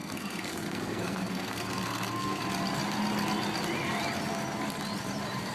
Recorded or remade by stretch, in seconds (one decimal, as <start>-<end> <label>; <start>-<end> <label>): 0.0-2.4 remade; 2.4-5.5 recorded